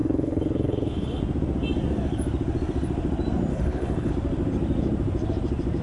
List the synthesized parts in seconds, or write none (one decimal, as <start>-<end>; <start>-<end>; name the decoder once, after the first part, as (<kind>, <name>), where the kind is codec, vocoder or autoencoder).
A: 0.0-1.2 (codec, HILCodec); 3.5-4.1